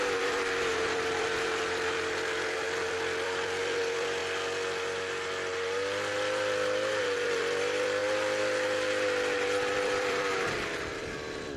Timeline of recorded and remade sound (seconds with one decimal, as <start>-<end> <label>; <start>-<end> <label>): 0.0-4.2 remade; 4.2-7.0 recorded; 7.0-8.0 remade; 8.0-9.7 recorded; 9.7-11.6 remade